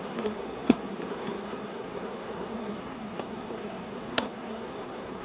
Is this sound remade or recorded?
remade